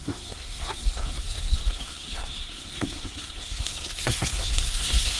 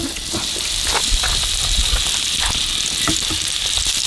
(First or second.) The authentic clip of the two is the second